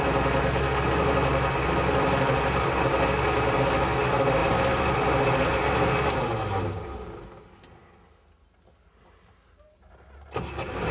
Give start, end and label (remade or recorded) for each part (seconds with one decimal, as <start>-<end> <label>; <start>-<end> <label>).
0.0-10.9 recorded